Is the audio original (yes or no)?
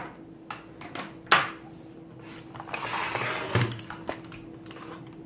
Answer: yes